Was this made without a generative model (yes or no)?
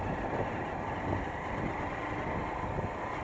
yes